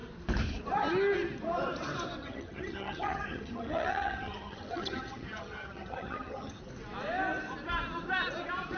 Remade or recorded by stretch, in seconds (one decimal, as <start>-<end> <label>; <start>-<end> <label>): 0.0-2.2 recorded; 2.2-6.6 remade; 6.6-8.8 recorded